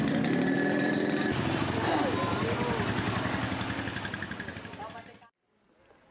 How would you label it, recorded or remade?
recorded